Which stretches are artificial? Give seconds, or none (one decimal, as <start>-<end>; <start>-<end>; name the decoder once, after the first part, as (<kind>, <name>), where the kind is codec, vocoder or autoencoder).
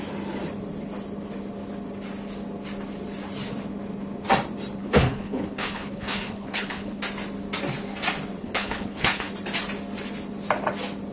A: 4.8-7.0 (codec, HILCodec); 8.4-9.3